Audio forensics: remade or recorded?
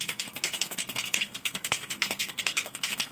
remade